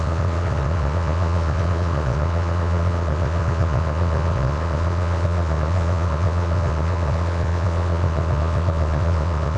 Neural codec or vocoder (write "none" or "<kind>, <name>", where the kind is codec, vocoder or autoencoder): vocoder, Vocos